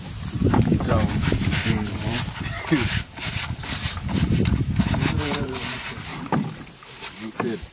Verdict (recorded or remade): remade